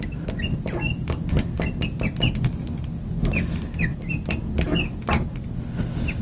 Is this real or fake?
real